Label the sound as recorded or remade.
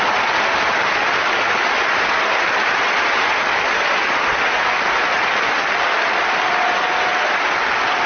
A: recorded